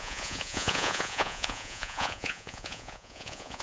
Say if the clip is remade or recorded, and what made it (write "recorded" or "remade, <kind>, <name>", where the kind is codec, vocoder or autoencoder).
remade, vocoder, Vocos